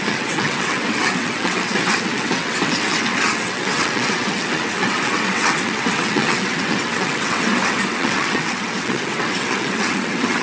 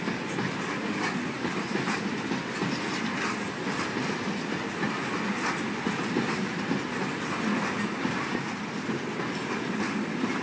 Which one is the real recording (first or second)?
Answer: second